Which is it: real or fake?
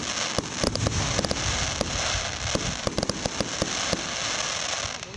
real